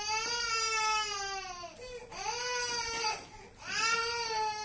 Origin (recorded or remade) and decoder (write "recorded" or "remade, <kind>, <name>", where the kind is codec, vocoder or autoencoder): recorded